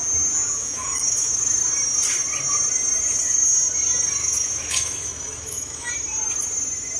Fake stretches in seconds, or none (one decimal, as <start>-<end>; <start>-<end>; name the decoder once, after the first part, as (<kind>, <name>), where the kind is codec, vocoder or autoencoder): 0.6-1.6 (autoencoder, DAC-VAE); 4.2-5.9